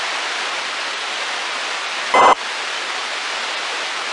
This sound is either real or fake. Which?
real